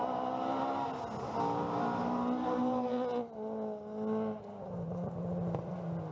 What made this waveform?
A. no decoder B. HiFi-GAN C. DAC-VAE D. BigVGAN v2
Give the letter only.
A